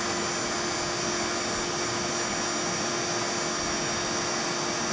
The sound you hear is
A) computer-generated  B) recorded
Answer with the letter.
B